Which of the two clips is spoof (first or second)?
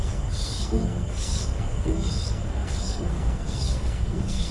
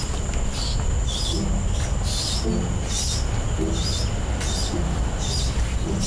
first